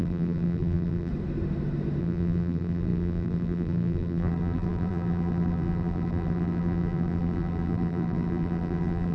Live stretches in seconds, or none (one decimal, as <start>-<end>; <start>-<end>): 1.1-2.0